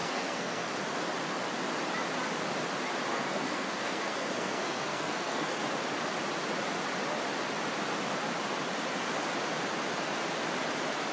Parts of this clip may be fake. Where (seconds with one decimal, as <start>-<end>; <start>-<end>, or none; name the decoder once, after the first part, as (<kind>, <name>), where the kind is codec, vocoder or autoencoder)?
0.0-0.7 (codec, SNAC); 3.1-5.6